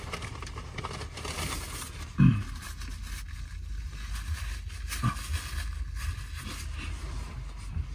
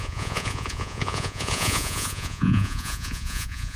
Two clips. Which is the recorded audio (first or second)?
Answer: first